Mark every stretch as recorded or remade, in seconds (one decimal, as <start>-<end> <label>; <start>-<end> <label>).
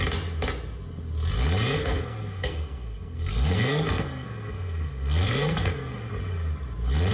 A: 0.0-1.8 recorded; 1.8-6.1 remade; 6.1-7.1 recorded